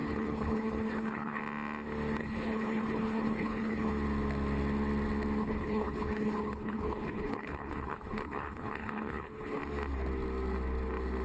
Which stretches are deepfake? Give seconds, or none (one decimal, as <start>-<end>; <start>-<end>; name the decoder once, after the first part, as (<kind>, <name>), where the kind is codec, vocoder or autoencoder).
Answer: 0.0-1.4 (codec, HILCodec); 2.2-3.9; 5.4-9.6